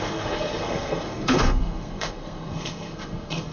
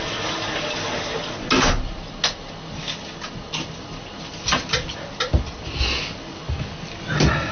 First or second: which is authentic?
second